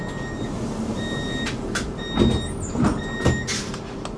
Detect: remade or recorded recorded